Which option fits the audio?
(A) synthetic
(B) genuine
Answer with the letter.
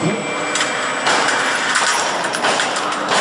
B